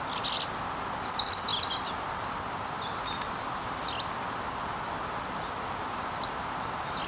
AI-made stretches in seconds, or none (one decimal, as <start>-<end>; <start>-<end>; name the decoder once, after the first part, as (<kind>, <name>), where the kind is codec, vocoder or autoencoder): none